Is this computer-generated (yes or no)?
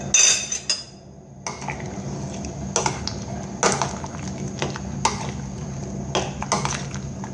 no